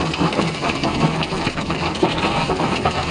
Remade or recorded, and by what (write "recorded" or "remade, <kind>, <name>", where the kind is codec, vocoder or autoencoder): remade, codec, SNAC